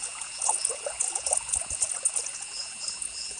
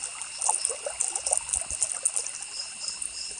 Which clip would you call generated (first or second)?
first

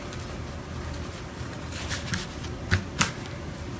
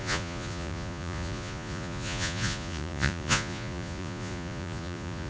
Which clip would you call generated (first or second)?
second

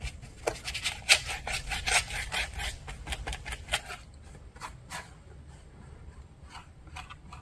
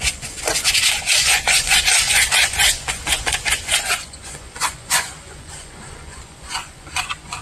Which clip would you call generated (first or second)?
second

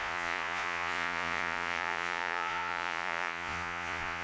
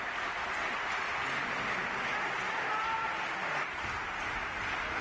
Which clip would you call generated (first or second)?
first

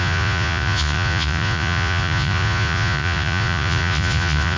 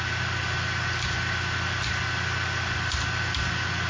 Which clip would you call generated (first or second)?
first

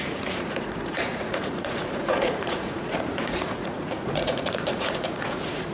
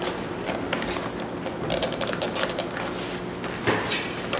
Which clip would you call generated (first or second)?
first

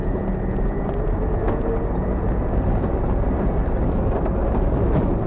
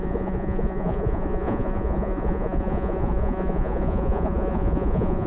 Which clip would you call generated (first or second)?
second